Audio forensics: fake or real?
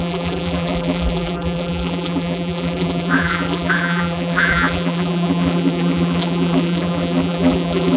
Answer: fake